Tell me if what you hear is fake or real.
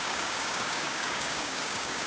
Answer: fake